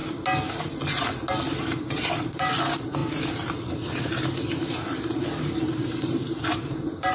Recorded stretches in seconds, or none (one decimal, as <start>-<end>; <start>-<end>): 0.0-1.6